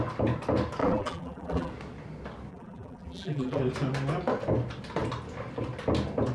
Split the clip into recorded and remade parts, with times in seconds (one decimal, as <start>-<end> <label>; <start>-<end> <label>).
0.0-0.8 recorded; 0.8-1.7 remade; 1.7-2.5 recorded; 2.5-3.6 remade; 3.6-6.3 recorded